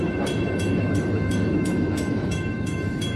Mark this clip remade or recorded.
remade